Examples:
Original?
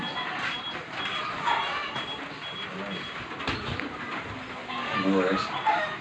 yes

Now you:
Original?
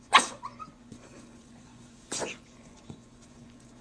no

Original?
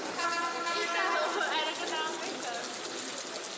yes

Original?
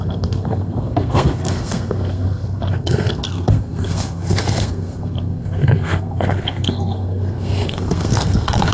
no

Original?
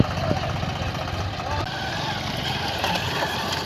yes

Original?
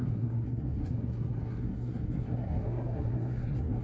no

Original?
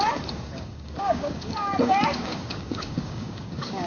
no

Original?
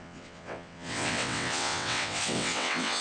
no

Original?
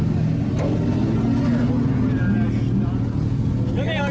yes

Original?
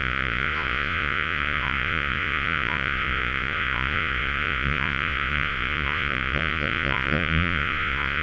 no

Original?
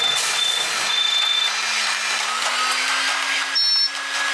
yes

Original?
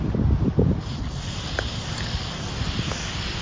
yes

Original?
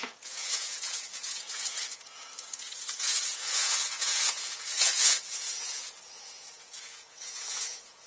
no